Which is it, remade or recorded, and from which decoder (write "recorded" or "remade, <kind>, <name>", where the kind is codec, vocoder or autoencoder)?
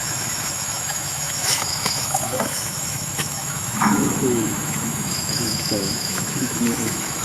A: remade, autoencoder, DAC-VAE